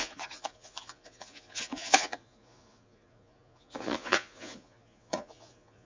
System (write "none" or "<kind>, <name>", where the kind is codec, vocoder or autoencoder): vocoder, Vocos